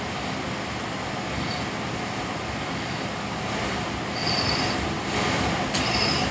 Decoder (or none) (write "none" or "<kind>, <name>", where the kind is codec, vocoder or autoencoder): none